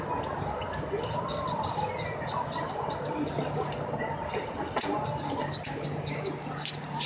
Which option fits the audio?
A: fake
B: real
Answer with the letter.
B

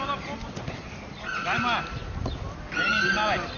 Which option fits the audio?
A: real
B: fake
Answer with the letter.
A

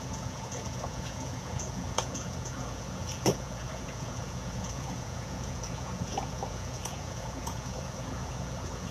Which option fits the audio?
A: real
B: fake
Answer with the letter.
B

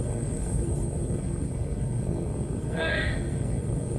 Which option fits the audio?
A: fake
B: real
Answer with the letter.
A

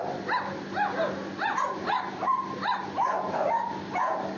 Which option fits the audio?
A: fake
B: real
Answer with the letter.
B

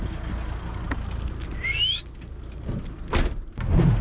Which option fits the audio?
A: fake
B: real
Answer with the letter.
B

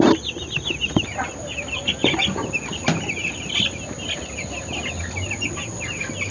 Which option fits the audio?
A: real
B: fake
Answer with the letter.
A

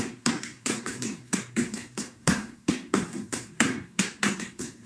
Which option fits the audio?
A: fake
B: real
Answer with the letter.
A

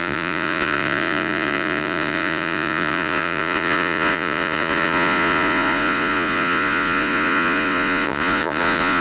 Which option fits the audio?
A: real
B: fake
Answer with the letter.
B